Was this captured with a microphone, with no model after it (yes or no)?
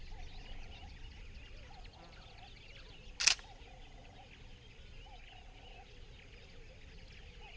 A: yes